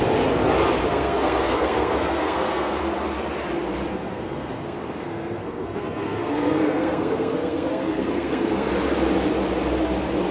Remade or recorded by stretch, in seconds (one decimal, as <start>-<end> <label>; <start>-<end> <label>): 0.0-0.8 recorded; 0.8-2.8 remade; 2.8-3.9 recorded; 3.9-8.7 remade; 8.7-10.3 recorded